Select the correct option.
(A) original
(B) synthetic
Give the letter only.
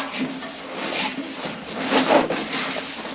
B